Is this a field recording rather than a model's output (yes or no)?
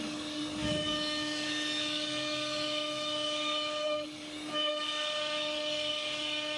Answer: no